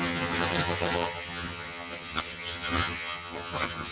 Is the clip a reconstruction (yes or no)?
yes